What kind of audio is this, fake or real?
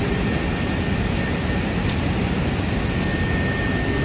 real